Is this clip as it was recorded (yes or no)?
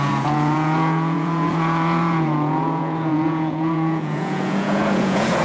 no